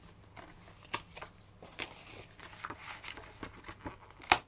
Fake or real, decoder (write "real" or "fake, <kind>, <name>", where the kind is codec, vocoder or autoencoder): real